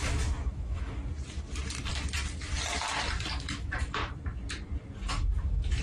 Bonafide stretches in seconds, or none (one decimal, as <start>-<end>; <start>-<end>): 1.0-3.4; 4.0-5.1